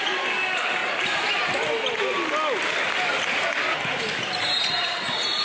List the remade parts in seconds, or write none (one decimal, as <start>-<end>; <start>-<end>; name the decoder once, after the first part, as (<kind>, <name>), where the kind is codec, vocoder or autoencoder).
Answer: none